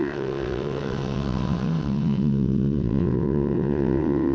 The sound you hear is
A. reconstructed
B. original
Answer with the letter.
A